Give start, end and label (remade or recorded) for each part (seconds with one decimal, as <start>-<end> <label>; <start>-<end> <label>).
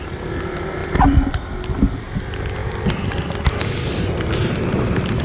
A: 0.0-5.2 recorded